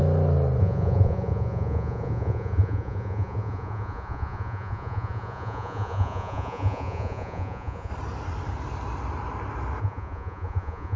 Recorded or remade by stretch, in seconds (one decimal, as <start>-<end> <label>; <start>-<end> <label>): 0.0-0.6 recorded; 0.6-7.9 remade; 7.9-9.8 recorded; 9.8-11.0 remade

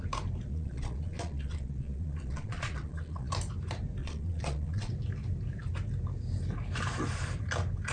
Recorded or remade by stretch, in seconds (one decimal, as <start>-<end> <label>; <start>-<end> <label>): 0.0-0.5 recorded; 0.5-3.3 remade; 3.3-4.0 recorded; 4.0-4.9 remade; 4.9-7.9 recorded

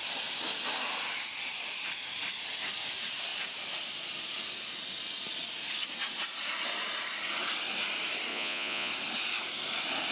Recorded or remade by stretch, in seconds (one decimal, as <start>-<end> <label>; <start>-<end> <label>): 0.0-8.3 recorded; 8.3-8.9 remade; 8.9-10.1 recorded

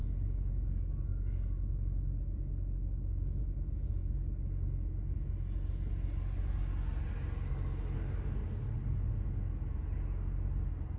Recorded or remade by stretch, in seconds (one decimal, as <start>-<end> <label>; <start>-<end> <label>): 0.0-11.0 recorded

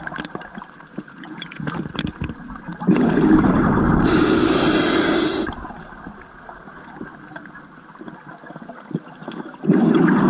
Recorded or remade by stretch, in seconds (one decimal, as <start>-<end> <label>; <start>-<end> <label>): 0.0-0.9 recorded; 0.9-1.7 remade; 1.7-10.3 recorded

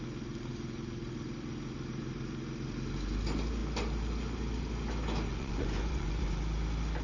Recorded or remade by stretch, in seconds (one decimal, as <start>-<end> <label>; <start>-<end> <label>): 0.0-5.3 recorded; 5.3-6.4 remade; 6.4-7.0 recorded

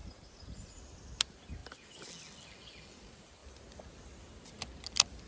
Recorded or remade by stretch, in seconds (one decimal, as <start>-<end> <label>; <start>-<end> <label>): 0.0-0.8 remade; 0.8-5.3 recorded